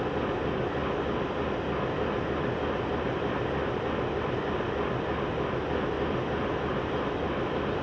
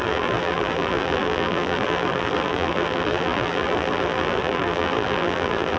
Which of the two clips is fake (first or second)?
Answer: second